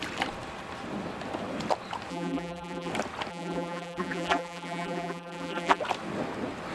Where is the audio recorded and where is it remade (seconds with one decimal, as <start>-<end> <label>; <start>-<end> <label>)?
0.0-2.1 recorded; 2.1-2.9 remade; 2.9-3.3 recorded; 3.3-5.8 remade; 5.8-6.7 recorded